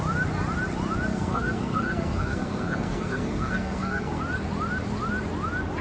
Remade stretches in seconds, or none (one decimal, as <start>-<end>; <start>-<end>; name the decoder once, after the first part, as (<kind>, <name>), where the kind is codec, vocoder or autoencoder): 1.1-4.2 (codec, SNAC)